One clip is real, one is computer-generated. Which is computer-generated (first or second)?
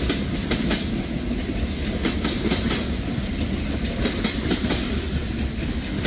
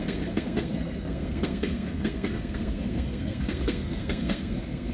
second